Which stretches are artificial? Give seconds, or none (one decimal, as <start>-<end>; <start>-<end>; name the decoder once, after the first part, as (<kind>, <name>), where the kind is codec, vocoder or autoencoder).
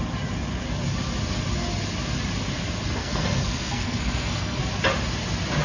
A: 3.0-4.6 (codec, SNAC)